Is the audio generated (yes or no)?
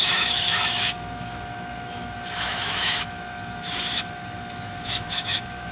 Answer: yes